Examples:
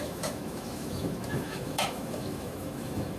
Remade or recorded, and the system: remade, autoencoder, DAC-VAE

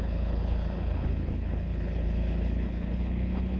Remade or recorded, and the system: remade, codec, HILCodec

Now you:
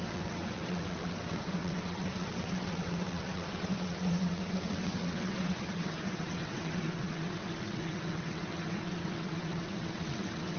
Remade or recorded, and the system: remade, vocoder, WaveNeXt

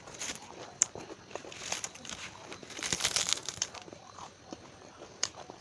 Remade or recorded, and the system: remade, vocoder, BigVGAN v2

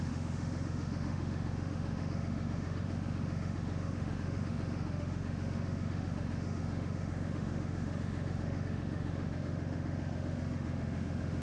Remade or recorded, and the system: remade, autoencoder, DAC-VAE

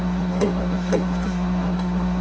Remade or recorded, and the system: remade, codec, SNAC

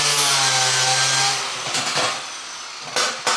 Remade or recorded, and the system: recorded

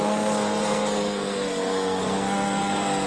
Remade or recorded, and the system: remade, codec, SNAC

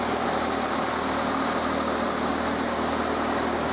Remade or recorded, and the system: recorded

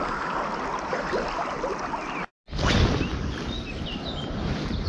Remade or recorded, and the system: recorded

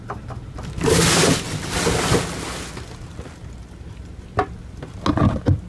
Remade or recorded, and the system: recorded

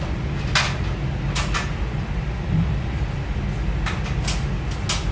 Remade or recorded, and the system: recorded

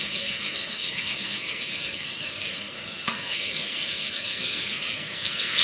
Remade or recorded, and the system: remade, codec, SNAC